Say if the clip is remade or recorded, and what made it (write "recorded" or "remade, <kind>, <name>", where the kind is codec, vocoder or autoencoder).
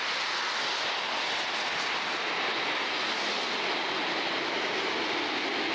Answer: recorded